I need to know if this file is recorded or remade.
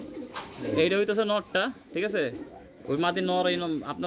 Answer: remade